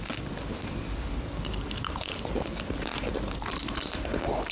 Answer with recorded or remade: remade